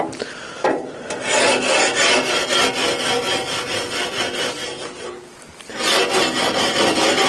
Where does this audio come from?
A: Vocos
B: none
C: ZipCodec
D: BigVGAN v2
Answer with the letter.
B